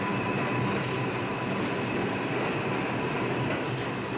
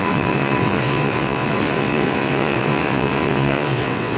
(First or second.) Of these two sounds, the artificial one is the second